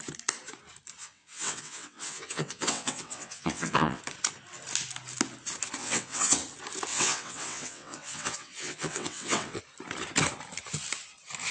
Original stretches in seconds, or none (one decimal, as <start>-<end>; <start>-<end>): 0.0-1.0; 4.0-5.8; 6.4-6.9; 9.6-11.5